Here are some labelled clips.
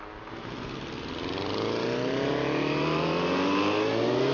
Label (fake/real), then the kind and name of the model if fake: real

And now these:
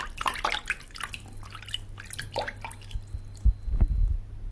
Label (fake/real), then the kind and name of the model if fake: real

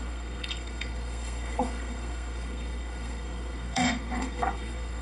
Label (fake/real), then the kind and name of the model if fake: fake, codec, SNAC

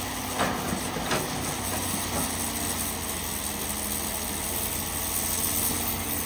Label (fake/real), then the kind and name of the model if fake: real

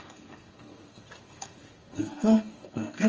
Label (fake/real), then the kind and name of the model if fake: fake, codec, SNAC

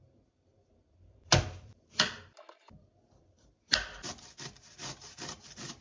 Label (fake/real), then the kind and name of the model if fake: real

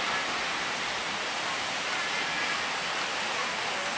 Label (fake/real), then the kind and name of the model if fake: real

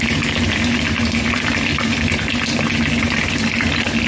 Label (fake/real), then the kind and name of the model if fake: real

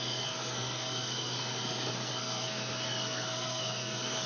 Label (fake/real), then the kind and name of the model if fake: fake, codec, SNAC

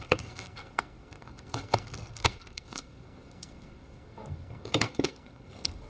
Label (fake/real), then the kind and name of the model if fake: fake, codec, SNAC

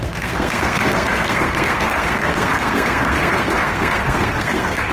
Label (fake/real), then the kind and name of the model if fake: fake, codec, SNAC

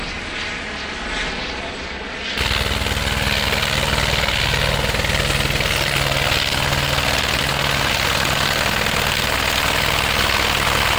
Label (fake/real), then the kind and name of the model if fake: real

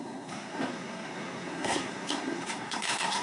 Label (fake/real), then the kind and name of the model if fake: fake, codec, SNAC